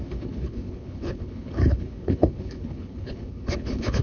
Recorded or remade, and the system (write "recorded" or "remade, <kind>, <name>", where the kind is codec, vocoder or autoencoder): remade, codec, HILCodec